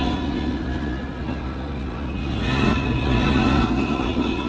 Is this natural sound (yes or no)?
no